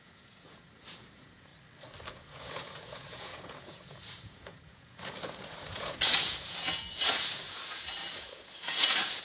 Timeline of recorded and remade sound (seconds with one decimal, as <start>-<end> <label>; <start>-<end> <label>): 0.0-1.5 remade; 1.5-2.1 recorded; 2.1-9.2 remade